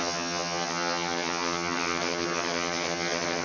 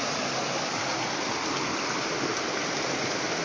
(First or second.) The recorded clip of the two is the second